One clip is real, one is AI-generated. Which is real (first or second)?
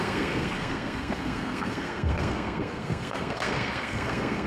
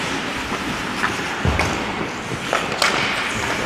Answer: second